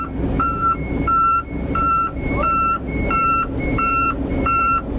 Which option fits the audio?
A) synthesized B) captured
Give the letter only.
A